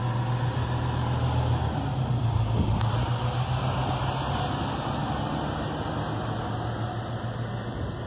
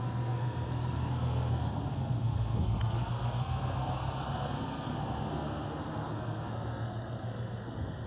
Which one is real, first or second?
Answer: first